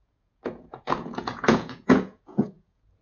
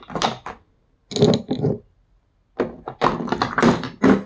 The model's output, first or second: first